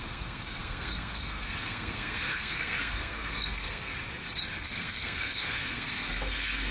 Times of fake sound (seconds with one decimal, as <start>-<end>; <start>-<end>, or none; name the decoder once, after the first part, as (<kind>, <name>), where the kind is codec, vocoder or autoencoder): 0.0-3.9 (codec, SNAC); 4.6-6.7